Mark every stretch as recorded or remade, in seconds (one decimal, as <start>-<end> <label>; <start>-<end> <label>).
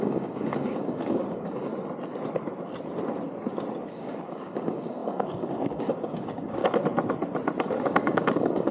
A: 0.0-1.7 remade; 1.7-3.9 recorded; 3.9-6.6 remade; 6.6-7.8 recorded; 7.8-8.7 remade